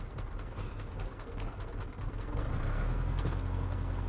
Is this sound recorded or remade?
remade